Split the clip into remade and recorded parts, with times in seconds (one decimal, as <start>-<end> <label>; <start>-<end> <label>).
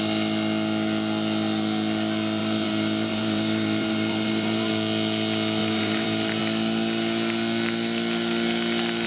0.0-2.4 recorded; 2.4-4.7 remade; 4.7-5.6 recorded; 5.6-6.4 remade; 6.4-9.1 recorded